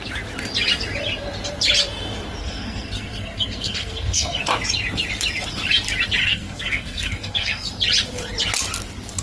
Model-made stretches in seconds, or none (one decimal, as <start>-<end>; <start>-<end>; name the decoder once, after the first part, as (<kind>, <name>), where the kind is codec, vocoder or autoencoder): 2.4-4.4 (codec, SNAC); 6.2-7.7